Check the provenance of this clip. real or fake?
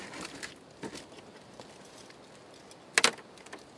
real